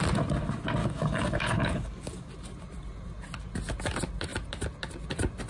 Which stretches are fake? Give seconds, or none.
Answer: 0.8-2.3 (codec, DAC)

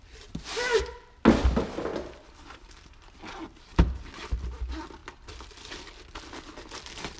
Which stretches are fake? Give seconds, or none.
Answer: none

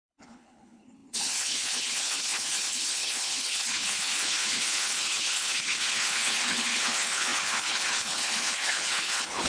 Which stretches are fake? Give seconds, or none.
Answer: 0.0-9.5 (codec, HILCodec)

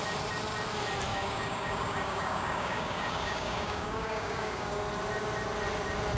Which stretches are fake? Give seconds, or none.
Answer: 1.1-4.8 (codec, DAC)

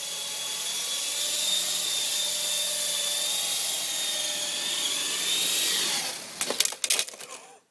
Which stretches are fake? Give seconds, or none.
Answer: none

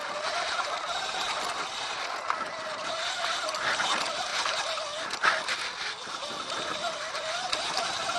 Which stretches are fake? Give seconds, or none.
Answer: none

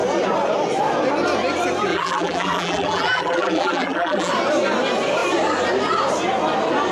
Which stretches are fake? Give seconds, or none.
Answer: 1.9-4.3 (vocoder, BigVGAN v2)

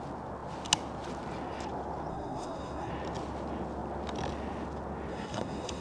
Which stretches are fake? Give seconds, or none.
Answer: 2.1-2.9 (codec, SNAC); 5.1-5.8